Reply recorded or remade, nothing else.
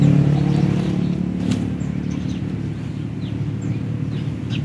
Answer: recorded